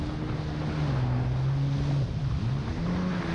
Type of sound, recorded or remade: recorded